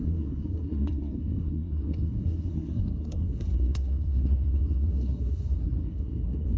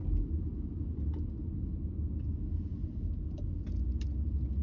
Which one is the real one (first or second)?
second